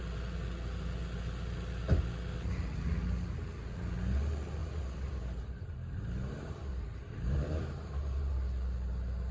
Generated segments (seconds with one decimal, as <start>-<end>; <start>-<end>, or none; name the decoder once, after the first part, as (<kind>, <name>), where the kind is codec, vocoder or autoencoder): 4.6-8.3 (vocoder, BigVGAN v2)